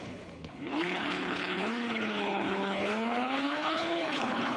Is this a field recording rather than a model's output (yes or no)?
no